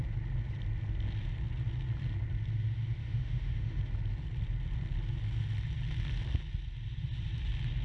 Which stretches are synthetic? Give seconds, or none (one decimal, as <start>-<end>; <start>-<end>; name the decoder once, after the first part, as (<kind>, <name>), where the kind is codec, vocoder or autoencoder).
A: 3.0-3.8 (autoencoder, DAC-VAE)